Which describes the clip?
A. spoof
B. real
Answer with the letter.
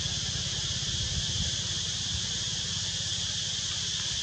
B